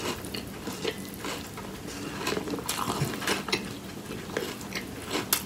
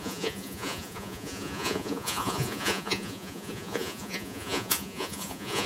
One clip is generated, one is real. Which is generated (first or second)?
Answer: second